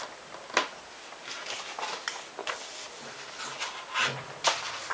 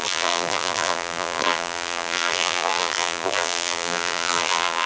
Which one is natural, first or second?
first